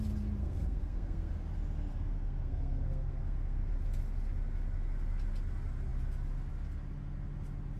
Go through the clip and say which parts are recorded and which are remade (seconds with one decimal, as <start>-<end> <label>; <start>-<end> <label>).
0.0-0.4 recorded; 0.4-1.3 remade; 1.3-1.9 recorded; 1.9-3.7 remade; 3.7-7.8 recorded